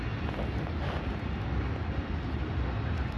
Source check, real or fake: real